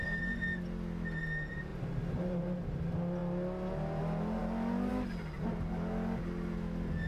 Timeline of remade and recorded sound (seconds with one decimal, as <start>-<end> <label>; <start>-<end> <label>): 0.0-1.7 recorded; 1.7-2.7 remade; 2.7-7.1 recorded